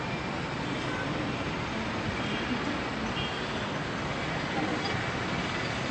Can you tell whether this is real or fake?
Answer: real